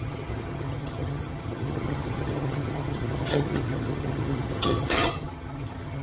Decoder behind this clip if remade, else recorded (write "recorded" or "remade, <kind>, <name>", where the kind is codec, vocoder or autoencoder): remade, vocoder, HiFi-GAN